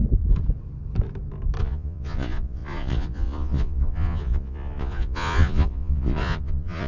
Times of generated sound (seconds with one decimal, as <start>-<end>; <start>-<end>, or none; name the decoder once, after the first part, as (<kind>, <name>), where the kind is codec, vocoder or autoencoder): 1.6-6.9 (vocoder, Vocos)